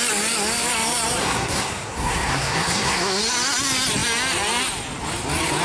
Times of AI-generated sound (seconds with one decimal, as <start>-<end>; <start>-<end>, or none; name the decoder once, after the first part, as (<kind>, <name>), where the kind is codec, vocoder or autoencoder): 1.2-3.2 (codec, SNAC)